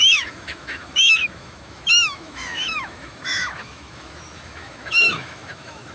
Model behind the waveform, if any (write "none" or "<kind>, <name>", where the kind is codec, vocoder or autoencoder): autoencoder, DAC-VAE